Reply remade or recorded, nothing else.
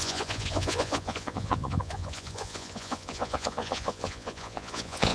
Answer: remade